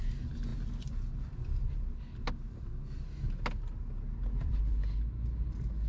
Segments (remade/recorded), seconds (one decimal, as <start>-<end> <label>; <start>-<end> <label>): 0.0-5.9 recorded

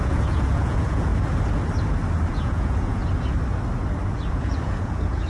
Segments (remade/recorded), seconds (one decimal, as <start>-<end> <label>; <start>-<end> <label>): 0.0-1.1 remade; 1.1-2.3 recorded; 2.3-3.0 remade; 3.0-4.3 recorded; 4.3-5.3 remade

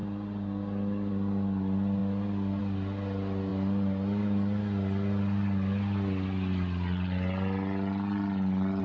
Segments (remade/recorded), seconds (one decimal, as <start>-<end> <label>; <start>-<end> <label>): 0.0-8.8 recorded

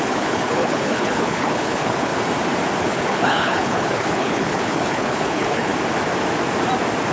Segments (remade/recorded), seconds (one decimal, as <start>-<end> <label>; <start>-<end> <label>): 0.0-2.1 remade; 2.1-2.8 recorded; 2.8-5.7 remade; 5.7-7.1 recorded

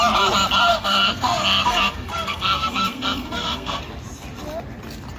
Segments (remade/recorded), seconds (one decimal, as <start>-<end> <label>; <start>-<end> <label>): 0.0-0.7 recorded; 0.7-3.8 remade; 3.8-5.2 recorded

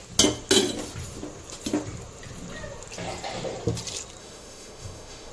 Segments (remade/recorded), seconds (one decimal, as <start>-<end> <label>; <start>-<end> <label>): 0.0-4.2 recorded; 4.2-5.3 remade

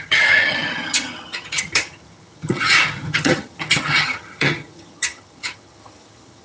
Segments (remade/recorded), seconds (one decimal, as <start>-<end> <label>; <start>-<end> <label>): 0.0-6.4 remade